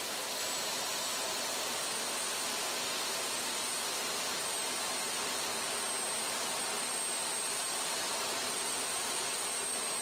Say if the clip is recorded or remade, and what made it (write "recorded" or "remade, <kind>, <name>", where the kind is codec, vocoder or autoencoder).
recorded